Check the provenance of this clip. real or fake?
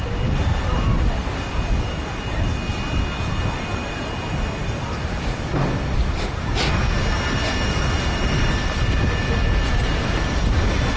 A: real